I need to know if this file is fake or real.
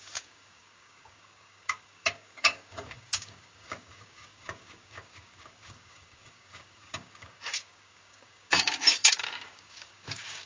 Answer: fake